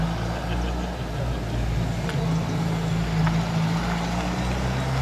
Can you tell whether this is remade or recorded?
recorded